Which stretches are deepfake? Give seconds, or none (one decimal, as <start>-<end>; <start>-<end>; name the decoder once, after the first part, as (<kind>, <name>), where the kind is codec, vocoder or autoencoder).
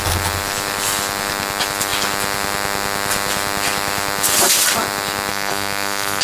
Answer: 5.3-6.2 (codec, SNAC)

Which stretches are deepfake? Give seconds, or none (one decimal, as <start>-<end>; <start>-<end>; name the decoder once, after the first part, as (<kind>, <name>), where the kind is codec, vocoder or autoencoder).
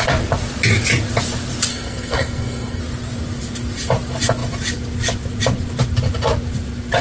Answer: 1.7-2.8 (codec, SNAC)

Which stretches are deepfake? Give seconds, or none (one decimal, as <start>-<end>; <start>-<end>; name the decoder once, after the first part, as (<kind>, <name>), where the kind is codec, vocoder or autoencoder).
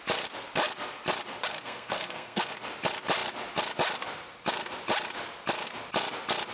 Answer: 1.5-2.5 (codec, SNAC)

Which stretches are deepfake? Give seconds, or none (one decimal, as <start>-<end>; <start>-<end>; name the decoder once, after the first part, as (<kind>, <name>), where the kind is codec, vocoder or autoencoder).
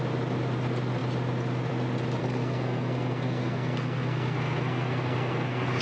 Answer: 2.2-5.8 (codec, SNAC)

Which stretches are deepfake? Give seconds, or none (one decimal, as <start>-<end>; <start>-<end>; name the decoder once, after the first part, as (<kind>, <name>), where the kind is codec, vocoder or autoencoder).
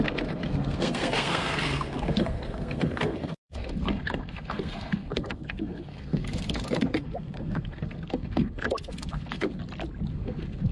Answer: 0.0-9.6 (codec, SNAC); 10.1-10.7